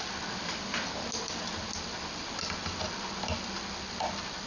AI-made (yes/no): no